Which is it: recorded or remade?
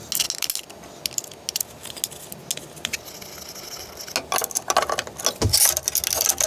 recorded